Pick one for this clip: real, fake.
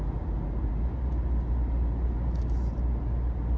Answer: real